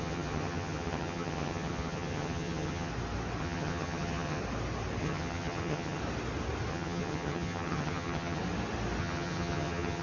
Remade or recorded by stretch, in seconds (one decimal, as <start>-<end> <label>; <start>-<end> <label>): 0.0-2.9 remade; 2.9-3.4 recorded; 3.4-4.4 remade; 4.4-5.0 recorded; 5.0-6.0 remade; 6.0-6.7 recorded; 6.7-8.4 remade; 8.4-9.0 recorded; 9.0-10.0 remade